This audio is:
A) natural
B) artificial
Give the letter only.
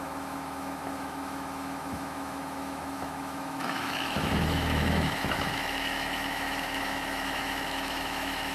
B